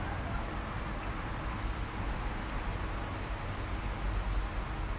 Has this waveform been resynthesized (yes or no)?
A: no